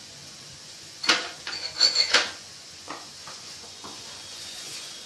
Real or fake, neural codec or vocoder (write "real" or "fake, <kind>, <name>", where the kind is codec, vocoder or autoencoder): fake, vocoder, Vocos